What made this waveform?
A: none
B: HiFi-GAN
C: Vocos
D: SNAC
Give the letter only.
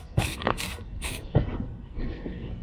D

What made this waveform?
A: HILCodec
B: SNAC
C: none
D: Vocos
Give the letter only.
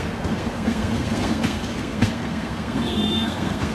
B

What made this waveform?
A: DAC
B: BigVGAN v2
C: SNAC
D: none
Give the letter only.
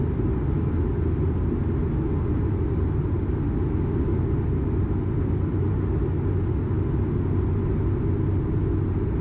D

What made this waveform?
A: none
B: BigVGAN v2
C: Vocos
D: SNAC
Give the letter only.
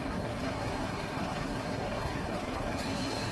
D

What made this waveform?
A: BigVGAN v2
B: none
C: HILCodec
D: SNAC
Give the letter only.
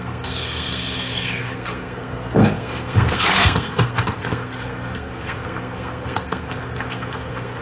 D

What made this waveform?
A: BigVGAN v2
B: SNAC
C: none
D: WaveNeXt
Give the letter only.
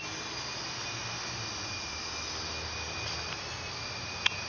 C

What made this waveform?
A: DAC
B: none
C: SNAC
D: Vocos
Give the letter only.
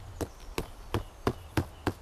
B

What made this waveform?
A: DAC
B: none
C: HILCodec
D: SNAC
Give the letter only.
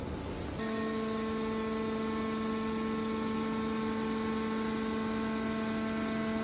B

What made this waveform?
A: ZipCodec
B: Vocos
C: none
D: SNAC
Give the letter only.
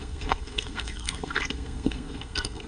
D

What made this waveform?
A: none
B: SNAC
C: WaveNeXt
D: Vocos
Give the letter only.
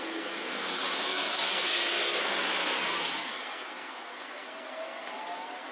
B